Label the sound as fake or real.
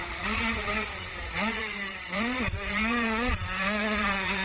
fake